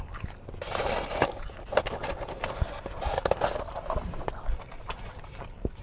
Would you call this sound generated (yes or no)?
no